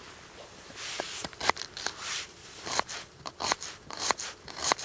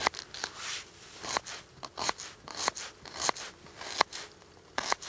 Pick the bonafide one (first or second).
second